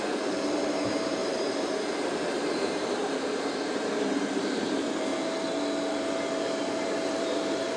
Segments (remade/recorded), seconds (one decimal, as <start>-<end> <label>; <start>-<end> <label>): 0.0-5.1 remade; 5.1-5.9 recorded; 5.9-7.8 remade

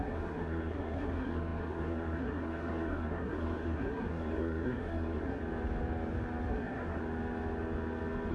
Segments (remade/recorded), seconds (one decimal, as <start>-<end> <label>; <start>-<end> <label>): 0.0-5.4 remade; 5.4-6.5 recorded; 6.5-7.0 remade; 7.0-8.3 recorded

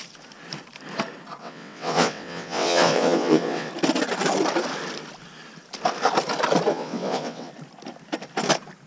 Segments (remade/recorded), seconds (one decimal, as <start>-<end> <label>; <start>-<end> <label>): 0.0-1.4 recorded; 1.4-3.7 remade; 3.7-6.7 recorded; 6.7-7.5 remade; 7.5-8.9 recorded

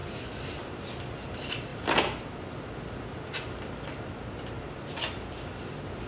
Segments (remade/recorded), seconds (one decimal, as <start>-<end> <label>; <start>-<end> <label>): 0.0-6.1 recorded

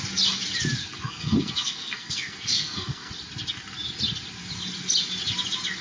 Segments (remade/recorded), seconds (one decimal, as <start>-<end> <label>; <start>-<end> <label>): 0.0-0.8 recorded; 0.8-3.1 remade; 3.1-5.8 recorded

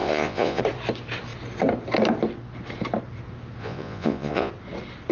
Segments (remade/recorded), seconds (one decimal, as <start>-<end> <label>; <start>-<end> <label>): 0.0-0.6 remade; 0.6-3.6 recorded; 3.6-4.5 remade; 4.5-5.1 recorded

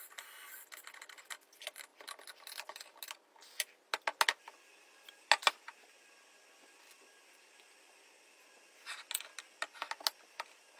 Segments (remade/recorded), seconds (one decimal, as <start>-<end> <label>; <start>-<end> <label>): 0.0-10.8 recorded